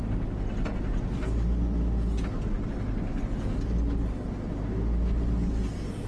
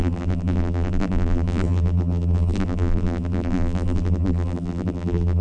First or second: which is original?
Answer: first